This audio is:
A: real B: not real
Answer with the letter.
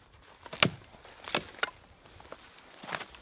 A